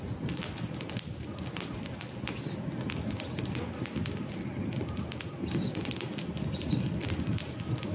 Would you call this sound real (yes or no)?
yes